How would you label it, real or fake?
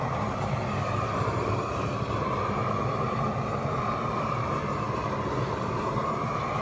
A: fake